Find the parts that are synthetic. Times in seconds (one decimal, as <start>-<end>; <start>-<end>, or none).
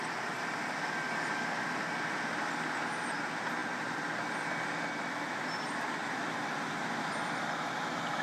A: 6.0-7.1